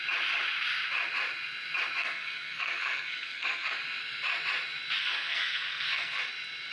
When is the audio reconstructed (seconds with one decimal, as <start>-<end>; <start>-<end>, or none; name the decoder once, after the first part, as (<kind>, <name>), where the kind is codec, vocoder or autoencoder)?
2.0-3.7 (codec, SNAC); 5.0-6.2